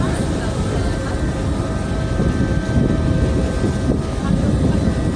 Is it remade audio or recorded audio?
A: recorded